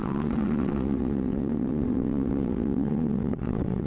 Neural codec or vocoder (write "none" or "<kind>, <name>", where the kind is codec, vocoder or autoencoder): vocoder, WaveNeXt